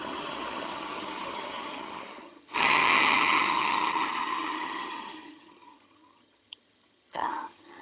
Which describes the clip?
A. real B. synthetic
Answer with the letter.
B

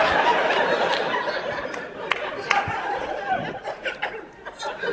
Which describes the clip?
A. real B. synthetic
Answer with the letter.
A